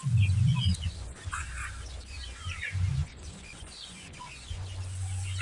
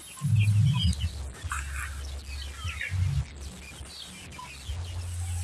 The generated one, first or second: first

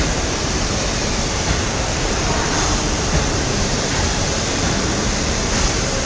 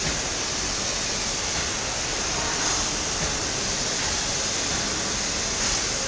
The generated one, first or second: first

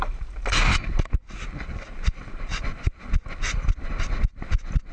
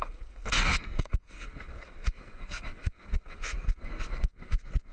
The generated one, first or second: second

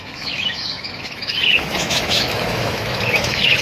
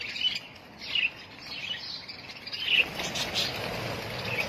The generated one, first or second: first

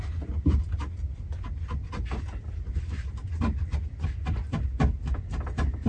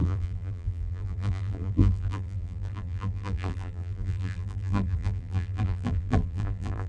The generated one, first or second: second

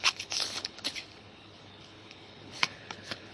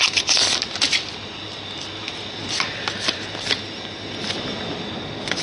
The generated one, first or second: first